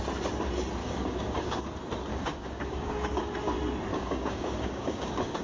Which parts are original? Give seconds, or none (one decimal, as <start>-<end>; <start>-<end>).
0.0-0.8; 1.6-2.1; 3.3-3.9